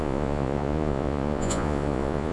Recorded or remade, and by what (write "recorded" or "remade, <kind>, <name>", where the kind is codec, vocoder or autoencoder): remade, vocoder, Vocos